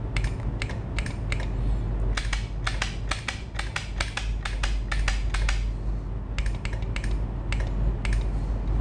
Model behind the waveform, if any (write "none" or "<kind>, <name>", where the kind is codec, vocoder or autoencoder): none